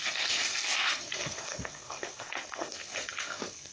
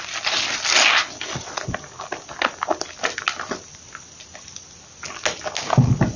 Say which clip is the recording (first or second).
second